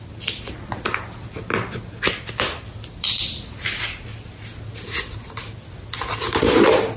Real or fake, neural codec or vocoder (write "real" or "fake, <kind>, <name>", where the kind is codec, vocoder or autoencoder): real